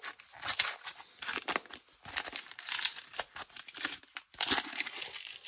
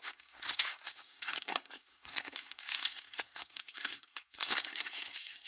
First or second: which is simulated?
second